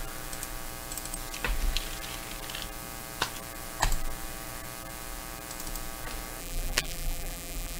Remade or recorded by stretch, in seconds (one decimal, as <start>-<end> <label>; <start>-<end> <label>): 0.0-6.4 recorded; 6.4-7.8 remade